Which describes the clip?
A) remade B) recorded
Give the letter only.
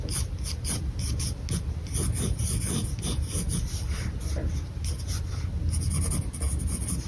B